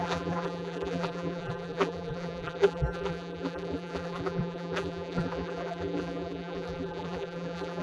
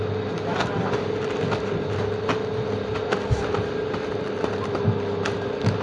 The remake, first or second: first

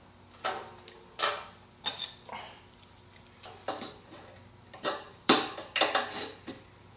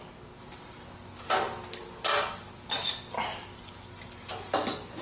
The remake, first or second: first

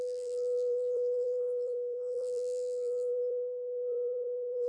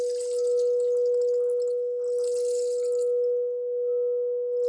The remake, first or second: first